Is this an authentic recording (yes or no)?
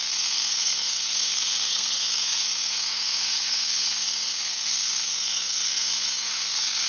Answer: no